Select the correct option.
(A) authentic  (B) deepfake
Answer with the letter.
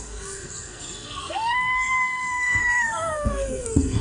B